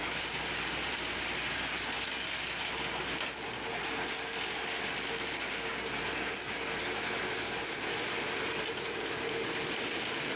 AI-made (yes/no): no